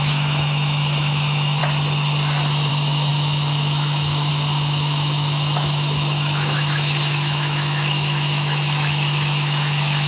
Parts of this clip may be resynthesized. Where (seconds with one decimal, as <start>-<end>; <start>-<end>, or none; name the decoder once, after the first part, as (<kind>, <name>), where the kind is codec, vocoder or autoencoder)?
0.0-1.6 (autoencoder, DAC-VAE); 2.7-10.1